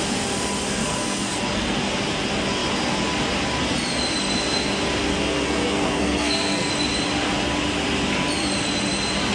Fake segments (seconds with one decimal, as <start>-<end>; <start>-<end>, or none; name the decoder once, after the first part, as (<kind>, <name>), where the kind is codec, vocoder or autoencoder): 0.8-1.9 (codec, SNAC); 5.1-6.7